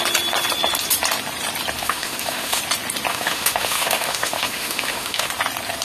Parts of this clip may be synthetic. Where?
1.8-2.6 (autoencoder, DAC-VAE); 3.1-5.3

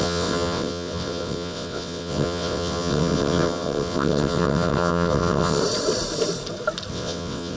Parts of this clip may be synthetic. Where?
0.0-5.6 (vocoder, WaveNeXt); 6.9-7.6

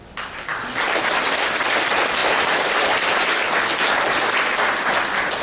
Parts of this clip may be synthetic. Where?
none

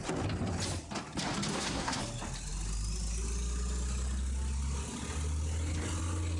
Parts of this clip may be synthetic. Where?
1.5-2.0 (codec, SNAC)

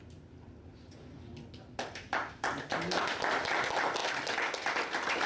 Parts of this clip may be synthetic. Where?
none

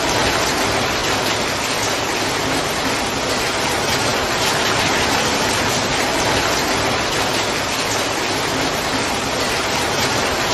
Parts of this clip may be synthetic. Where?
none